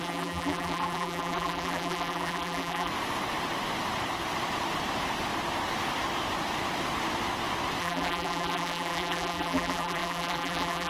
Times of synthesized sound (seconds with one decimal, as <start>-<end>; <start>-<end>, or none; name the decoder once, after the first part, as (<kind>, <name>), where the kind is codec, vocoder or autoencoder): 0.0-2.9 (vocoder, BigVGAN v2); 7.8-10.9